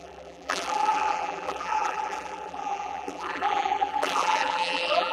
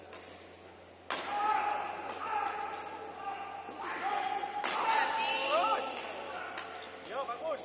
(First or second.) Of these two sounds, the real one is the second